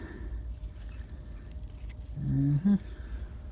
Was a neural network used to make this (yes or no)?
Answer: no